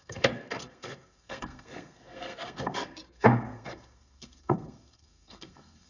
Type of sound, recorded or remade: remade